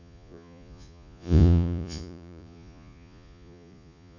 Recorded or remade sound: remade